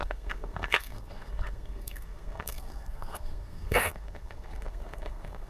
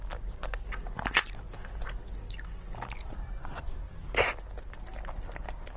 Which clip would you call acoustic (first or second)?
second